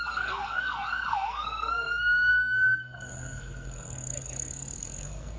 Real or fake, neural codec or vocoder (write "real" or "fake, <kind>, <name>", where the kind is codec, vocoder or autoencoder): fake, codec, SNAC